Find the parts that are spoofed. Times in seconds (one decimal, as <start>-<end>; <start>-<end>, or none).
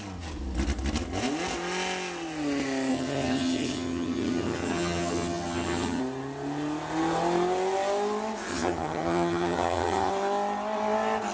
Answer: 2.9-6.0; 8.5-10.1